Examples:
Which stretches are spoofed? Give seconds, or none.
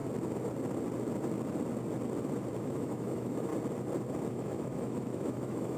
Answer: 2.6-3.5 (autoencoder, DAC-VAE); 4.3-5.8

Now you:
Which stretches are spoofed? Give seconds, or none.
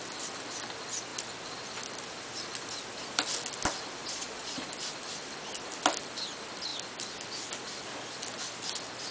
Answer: 4.0-4.7 (vocoder, Vocos)